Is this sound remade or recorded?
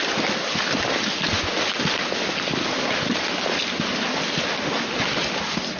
recorded